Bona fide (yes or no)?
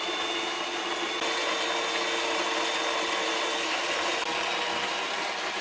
yes